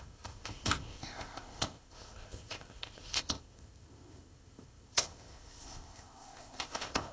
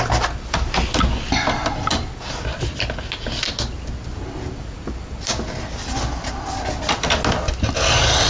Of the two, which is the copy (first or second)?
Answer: first